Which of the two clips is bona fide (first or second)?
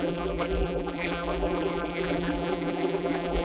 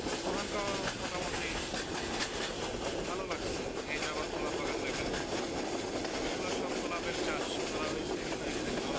second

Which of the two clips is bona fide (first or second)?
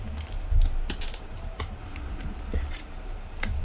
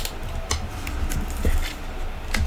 second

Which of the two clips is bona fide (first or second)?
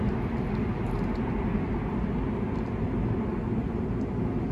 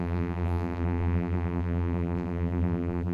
first